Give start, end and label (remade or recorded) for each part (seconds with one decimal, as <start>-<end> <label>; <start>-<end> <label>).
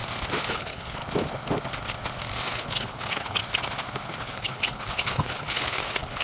0.0-0.5 recorded; 0.5-1.0 remade; 1.0-2.5 recorded; 2.5-3.4 remade; 3.4-4.2 recorded; 4.2-6.2 remade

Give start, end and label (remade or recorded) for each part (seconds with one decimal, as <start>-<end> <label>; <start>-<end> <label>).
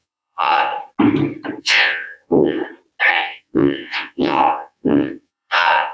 0.0-0.7 remade; 0.7-1.6 recorded; 1.6-2.6 remade; 2.6-3.1 recorded; 3.1-5.9 remade